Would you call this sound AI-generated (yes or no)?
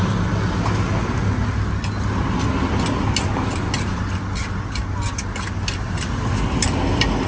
no